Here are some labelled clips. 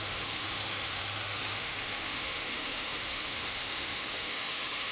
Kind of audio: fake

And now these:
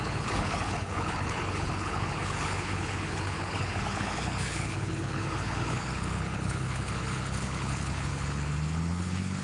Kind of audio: fake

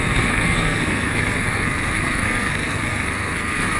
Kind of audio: fake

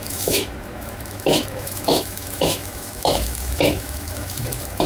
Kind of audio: fake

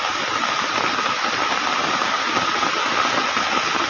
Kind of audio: real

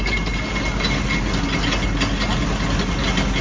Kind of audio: real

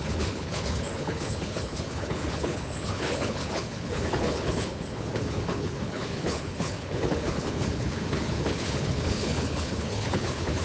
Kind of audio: fake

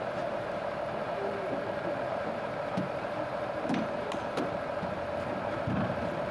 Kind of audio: fake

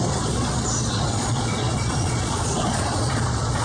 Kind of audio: fake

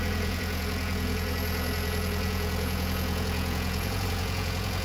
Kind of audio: fake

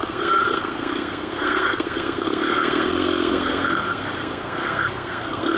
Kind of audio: fake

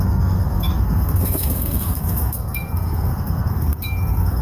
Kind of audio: fake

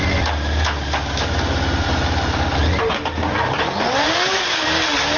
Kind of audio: real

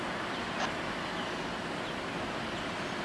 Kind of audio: real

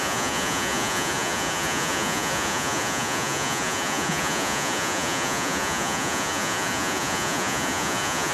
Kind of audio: fake